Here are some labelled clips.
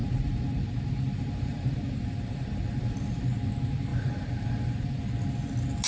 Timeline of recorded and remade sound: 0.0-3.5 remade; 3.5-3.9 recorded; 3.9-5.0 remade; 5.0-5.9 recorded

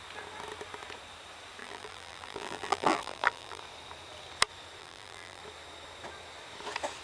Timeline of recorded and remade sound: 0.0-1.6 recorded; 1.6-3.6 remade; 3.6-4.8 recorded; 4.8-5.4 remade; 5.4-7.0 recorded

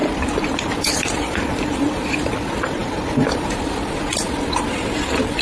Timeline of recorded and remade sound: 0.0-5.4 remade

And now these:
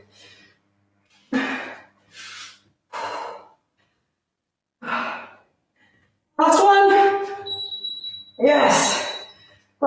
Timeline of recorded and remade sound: 0.0-6.2 recorded; 6.2-7.9 remade; 7.9-8.8 recorded; 8.8-9.5 remade; 9.5-9.9 recorded

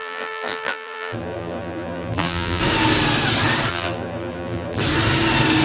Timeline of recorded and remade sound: 0.0-2.6 remade; 2.6-3.7 recorded; 3.7-4.8 remade; 4.8-5.6 recorded

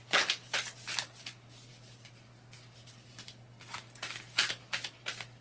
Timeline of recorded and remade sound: 0.0-5.4 recorded

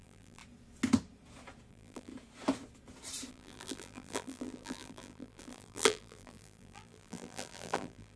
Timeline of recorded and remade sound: 0.0-0.4 remade; 0.4-1.7 recorded; 1.7-2.1 remade; 2.1-3.3 recorded; 3.3-8.2 remade

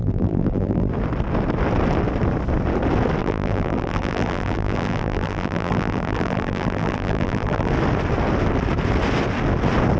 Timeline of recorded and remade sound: 0.0-0.9 remade; 0.9-3.2 recorded; 3.2-7.7 remade; 7.7-10.0 recorded